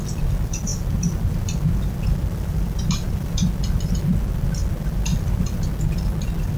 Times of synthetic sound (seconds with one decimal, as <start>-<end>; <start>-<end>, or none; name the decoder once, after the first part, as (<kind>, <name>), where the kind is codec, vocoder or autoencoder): 0.7-3.3 (vocoder, BigVGAN v2); 5.1-6.1